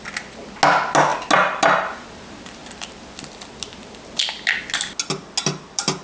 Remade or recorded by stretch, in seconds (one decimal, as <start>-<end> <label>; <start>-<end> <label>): 0.0-6.0 recorded